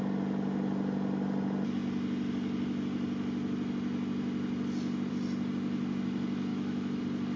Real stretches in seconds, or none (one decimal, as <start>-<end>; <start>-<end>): 0.0-6.5; 7.0-7.4